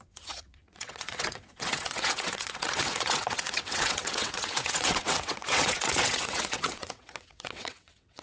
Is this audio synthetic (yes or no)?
yes